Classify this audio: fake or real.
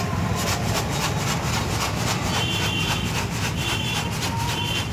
real